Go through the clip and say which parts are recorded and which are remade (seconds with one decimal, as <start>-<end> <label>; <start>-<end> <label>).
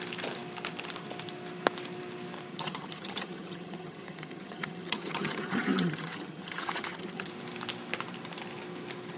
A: 0.0-2.5 recorded; 2.5-7.3 remade; 7.3-9.2 recorded